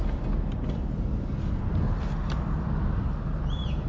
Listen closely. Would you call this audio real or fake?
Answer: real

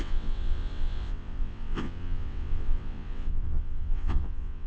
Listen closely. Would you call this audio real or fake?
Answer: fake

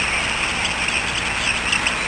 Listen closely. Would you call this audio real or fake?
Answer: real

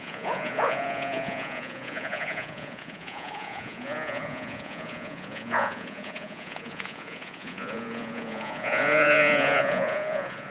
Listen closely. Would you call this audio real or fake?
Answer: fake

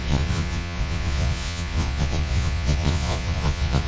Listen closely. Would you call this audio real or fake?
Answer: fake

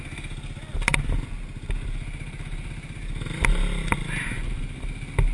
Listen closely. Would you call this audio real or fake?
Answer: real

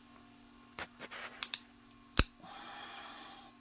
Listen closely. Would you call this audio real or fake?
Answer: real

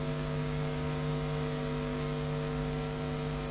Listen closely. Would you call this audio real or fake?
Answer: fake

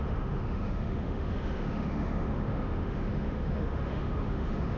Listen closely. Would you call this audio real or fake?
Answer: fake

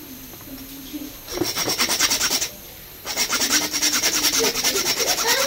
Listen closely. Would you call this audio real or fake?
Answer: real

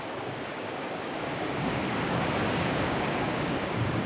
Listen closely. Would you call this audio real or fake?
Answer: fake